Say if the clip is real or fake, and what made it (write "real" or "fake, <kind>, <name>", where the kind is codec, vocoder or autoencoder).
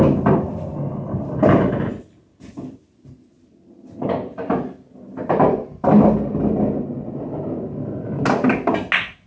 real